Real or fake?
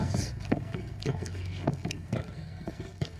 fake